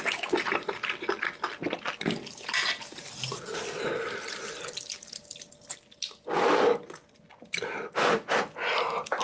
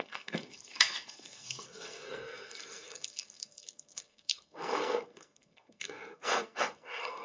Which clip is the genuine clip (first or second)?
first